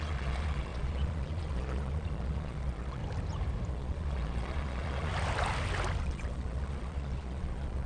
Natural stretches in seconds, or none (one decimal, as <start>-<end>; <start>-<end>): 3.0-3.7; 5.1-6.0